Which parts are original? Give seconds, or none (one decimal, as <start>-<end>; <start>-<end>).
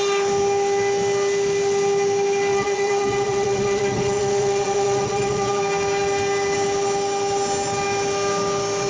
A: 0.0-2.5; 5.6-8.9